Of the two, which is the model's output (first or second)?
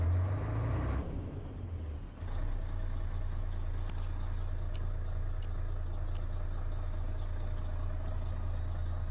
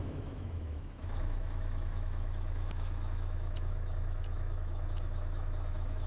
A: second